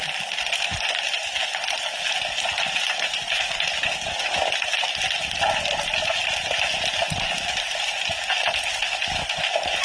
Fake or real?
real